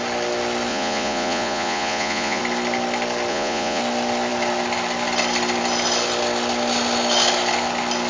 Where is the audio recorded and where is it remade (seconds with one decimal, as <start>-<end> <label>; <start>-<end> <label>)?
0.0-0.7 recorded; 0.7-2.4 remade; 2.4-3.3 recorded; 3.3-3.8 remade; 3.8-8.1 recorded

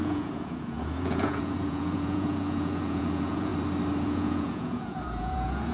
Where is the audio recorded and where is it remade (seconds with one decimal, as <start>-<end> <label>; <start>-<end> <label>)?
0.0-3.5 remade; 3.5-4.0 recorded; 4.0-5.7 remade

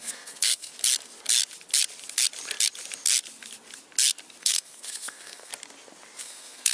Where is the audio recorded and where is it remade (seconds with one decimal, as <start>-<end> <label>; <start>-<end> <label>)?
0.0-0.7 remade; 0.7-4.4 recorded; 4.4-5.5 remade; 5.5-6.2 recorded; 6.2-6.7 remade

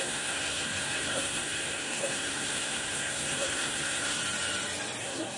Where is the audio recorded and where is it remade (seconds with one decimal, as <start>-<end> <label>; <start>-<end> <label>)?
0.0-4.2 remade; 4.2-5.0 recorded; 5.0-5.4 remade

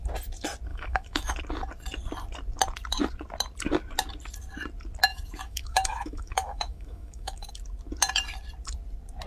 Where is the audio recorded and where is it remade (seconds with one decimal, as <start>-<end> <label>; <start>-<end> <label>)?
0.0-0.7 recorded; 0.7-1.4 remade; 1.4-5.1 recorded; 5.1-7.5 remade; 7.5-9.3 recorded

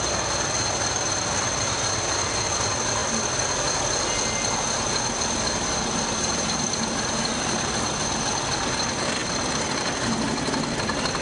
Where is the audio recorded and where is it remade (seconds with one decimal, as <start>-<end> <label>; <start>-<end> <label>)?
0.0-11.2 recorded

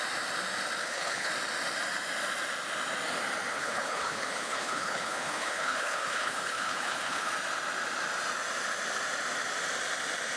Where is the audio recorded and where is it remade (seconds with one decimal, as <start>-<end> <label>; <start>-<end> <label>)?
0.0-0.8 recorded; 0.8-1.3 remade; 1.3-3.5 recorded; 3.5-7.3 remade; 7.3-10.4 recorded

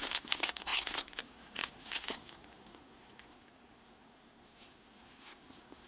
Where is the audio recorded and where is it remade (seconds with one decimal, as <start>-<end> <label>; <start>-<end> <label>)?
0.0-5.9 remade